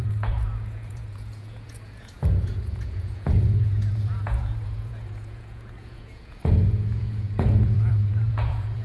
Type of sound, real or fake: fake